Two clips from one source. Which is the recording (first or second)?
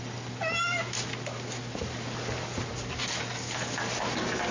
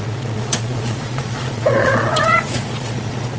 first